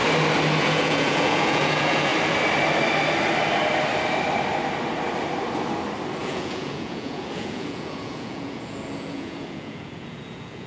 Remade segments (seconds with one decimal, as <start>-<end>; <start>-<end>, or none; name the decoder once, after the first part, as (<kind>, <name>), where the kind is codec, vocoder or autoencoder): 0.6-2.1 (vocoder, Vocos); 6.2-10.7

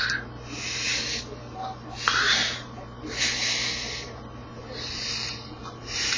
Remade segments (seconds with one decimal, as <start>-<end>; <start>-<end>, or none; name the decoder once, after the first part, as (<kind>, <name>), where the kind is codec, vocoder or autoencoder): 4.4-6.2 (vocoder, BigVGAN v2)

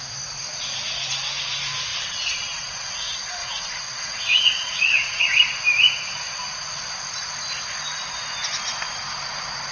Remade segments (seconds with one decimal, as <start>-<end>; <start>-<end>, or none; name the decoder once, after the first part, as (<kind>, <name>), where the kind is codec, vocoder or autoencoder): 1.9-2.9 (vocoder, WaveNeXt); 3.4-5.2

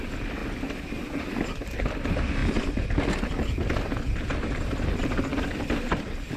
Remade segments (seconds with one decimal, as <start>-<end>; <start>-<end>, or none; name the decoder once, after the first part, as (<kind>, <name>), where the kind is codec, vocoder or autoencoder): none